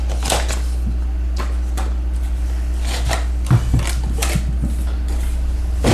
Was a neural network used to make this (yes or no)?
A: no